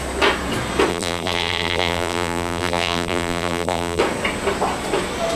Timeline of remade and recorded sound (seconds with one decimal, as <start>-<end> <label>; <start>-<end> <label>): 0.0-0.9 recorded; 0.9-4.0 remade; 4.0-5.4 recorded